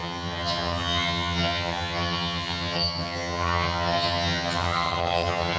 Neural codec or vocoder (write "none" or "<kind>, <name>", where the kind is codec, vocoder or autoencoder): vocoder, HiFi-GAN